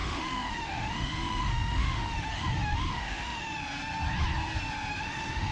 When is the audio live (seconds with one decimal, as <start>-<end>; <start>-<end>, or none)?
3.6-4.9